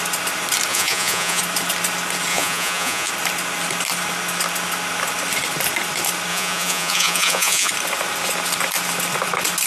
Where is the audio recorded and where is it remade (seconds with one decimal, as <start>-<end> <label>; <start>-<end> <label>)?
0.0-0.7 recorded; 0.7-1.4 remade; 1.4-2.3 recorded; 2.3-3.1 remade; 3.1-6.3 recorded; 6.3-7.7 remade; 7.7-9.7 recorded